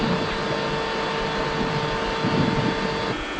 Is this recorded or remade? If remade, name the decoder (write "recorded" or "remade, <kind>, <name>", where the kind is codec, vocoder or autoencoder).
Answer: recorded